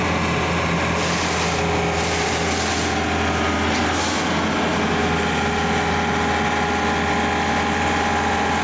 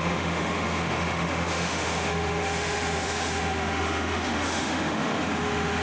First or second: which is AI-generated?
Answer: second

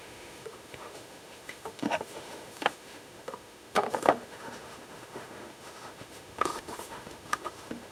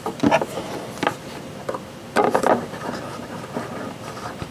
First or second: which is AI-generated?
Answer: first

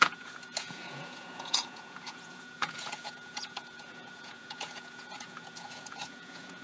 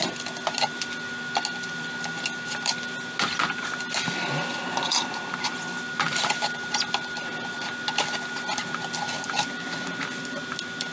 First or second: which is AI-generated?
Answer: first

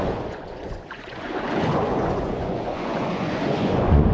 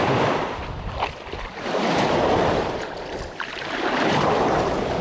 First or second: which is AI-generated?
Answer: first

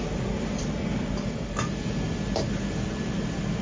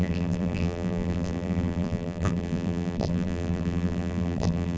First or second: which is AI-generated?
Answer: second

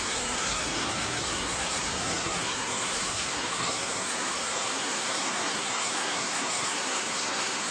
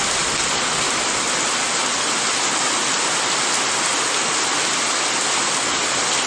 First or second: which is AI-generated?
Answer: first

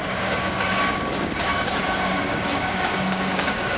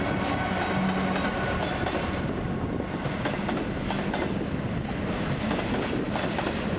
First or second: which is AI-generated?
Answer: first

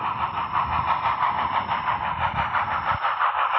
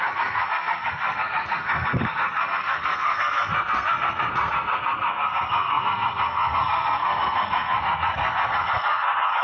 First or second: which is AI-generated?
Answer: second